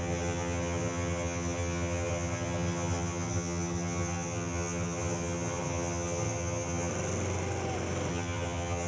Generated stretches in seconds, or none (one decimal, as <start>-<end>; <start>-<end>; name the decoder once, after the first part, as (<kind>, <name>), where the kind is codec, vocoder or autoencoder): 0.0-6.9 (vocoder, HiFi-GAN); 8.1-8.9